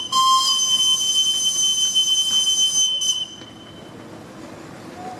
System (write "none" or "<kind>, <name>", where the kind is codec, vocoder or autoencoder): none